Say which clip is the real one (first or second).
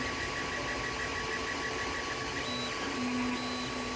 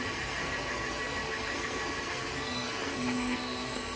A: first